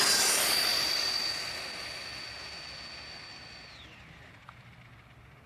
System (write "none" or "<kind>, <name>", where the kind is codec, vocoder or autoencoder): none